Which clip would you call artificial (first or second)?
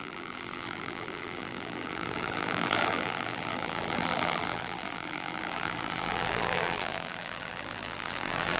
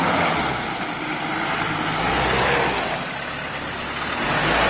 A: first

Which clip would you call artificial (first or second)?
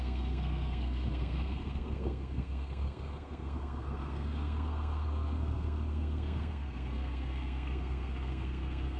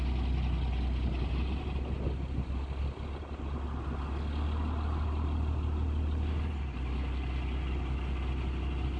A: first